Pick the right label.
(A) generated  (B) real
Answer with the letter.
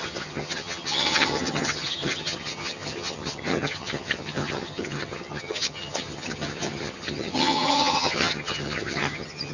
A